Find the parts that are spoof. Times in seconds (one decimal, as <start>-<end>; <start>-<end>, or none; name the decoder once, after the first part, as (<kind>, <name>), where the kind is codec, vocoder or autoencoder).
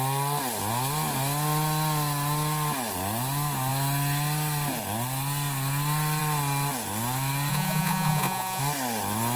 7.5-8.6 (vocoder, Vocos)